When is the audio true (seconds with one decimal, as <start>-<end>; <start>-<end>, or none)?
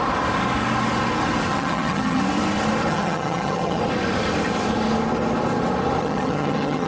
0.0-1.5; 2.2-2.9; 3.8-6.0